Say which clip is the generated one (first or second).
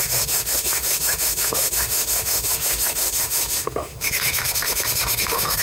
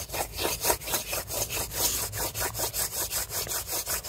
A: first